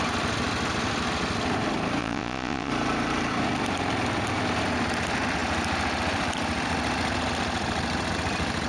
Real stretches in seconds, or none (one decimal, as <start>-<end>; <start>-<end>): 0.0-2.0; 2.7-8.7